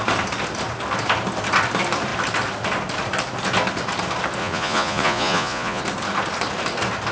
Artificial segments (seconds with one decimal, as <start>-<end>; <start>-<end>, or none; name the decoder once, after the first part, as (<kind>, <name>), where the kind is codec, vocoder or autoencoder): 4.4-5.8 (vocoder, Vocos)